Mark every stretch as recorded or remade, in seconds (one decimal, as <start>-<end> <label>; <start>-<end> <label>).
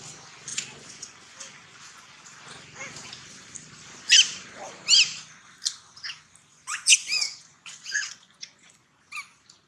0.0-0.5 recorded; 0.5-2.2 remade; 2.2-6.5 recorded; 6.5-9.0 remade; 9.0-9.7 recorded